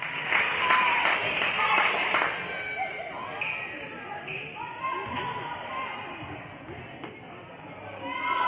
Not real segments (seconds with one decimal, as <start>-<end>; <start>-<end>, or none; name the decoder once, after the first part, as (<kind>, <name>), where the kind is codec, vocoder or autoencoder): none